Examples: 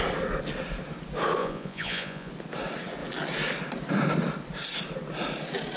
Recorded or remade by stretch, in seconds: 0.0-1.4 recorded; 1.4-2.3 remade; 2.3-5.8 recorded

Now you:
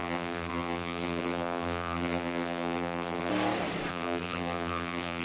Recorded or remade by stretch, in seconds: 0.0-3.3 remade; 3.3-3.9 recorded; 3.9-5.2 remade

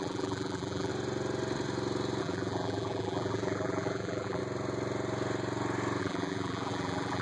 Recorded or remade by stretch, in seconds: 0.0-0.9 remade; 0.9-2.2 recorded; 2.2-4.4 remade; 4.4-6.0 recorded; 6.0-7.2 remade

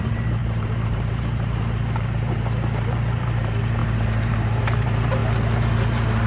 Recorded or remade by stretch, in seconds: 0.0-6.3 remade